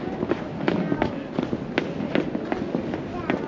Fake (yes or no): no